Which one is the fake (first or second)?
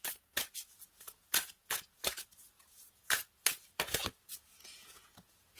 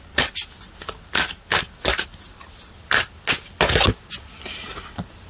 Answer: first